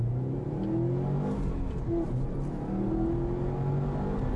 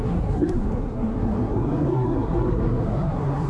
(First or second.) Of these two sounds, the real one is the first